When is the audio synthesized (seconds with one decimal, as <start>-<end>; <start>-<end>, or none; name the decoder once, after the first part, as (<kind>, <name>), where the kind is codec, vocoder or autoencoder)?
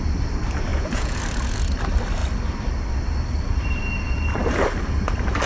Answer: 0.7-1.2 (vocoder, Vocos)